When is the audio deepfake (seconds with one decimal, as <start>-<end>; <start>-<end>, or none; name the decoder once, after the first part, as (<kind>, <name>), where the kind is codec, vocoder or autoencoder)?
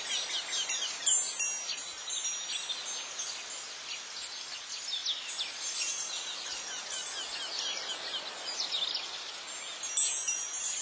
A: none